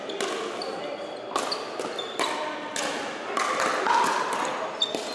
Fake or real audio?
real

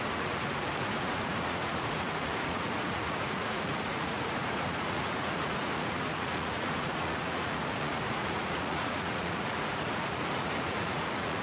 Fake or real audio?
fake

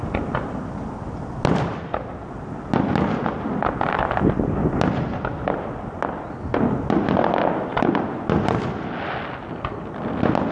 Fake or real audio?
real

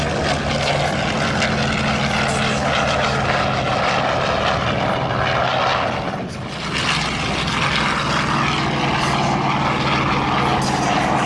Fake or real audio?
real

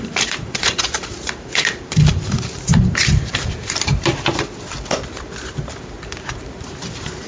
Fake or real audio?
fake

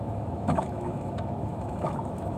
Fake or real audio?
fake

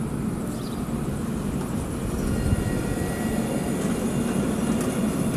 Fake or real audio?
real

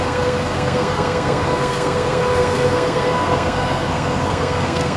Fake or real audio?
fake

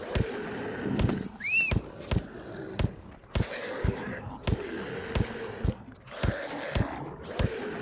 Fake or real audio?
real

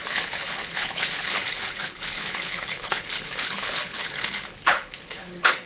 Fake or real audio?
fake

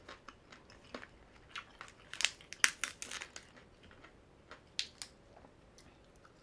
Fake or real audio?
real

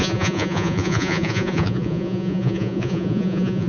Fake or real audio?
fake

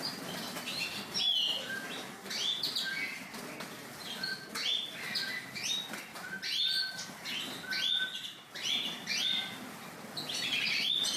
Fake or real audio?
real